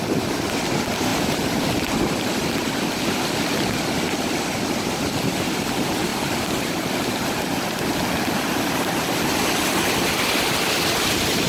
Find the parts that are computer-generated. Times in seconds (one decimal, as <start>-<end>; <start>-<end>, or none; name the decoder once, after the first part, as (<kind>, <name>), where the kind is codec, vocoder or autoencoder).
1.1-1.7 (vocoder, BigVGAN v2)

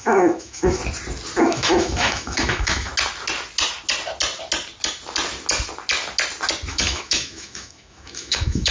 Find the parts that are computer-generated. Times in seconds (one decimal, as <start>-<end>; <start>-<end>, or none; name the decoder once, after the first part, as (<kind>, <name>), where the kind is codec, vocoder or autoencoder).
0.0-0.8 (autoencoder, DAC-VAE); 1.4-2.9; 6.7-8.7

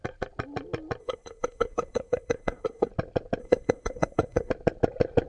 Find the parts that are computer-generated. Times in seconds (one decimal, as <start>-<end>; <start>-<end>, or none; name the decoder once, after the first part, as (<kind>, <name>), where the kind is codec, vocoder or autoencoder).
1.0-2.9 (codec, SNAC); 3.4-4.5

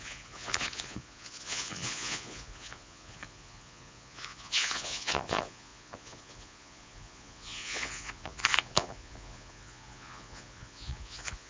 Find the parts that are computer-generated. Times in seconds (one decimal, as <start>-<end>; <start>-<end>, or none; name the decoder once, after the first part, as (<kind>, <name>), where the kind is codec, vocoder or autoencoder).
0.0-11.5 (vocoder, Vocos)

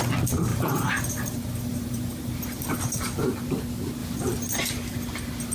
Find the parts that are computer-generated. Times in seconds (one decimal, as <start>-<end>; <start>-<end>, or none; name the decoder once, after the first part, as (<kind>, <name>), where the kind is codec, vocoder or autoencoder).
0.5-2.7 (vocoder, BigVGAN v2)

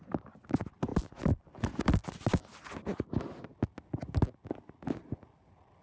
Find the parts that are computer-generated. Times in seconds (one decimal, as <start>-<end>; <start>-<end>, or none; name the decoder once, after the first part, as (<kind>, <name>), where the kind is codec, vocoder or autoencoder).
0.9-2.5 (vocoder, BigVGAN v2)